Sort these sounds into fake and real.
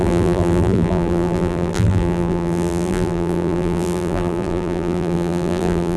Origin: fake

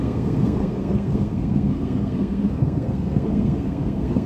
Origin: fake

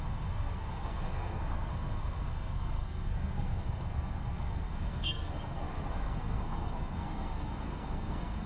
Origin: fake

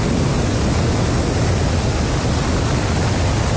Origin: real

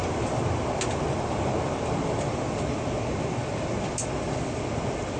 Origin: real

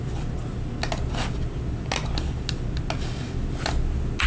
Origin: real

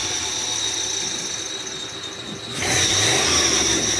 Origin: real